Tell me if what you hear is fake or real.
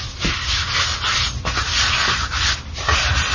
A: real